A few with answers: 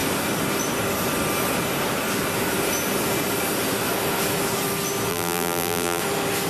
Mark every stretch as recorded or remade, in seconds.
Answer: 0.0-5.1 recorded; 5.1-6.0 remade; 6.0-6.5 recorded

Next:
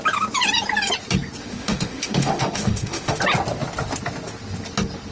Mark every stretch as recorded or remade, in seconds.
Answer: 0.0-1.4 recorded; 1.4-3.2 remade; 3.2-5.1 recorded

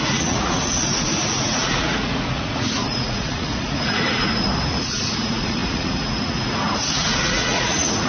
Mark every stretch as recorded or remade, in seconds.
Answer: 0.0-8.1 remade

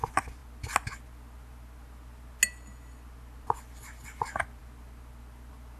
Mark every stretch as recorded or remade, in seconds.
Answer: 0.0-5.8 recorded

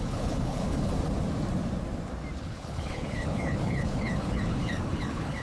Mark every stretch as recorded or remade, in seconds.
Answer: 0.0-0.9 remade; 0.9-2.4 recorded; 2.4-5.4 remade